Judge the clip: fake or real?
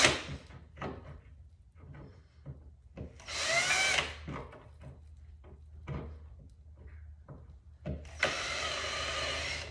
real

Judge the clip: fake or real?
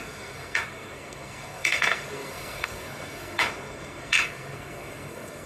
fake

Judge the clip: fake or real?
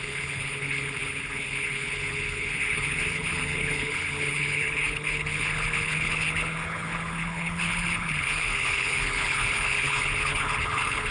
fake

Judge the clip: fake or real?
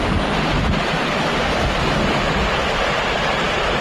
real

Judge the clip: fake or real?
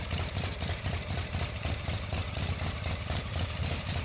fake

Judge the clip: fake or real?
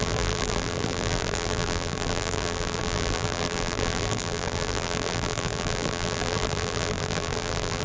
fake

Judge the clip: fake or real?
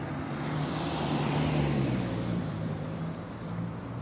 fake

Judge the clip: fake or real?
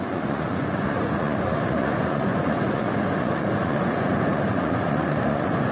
fake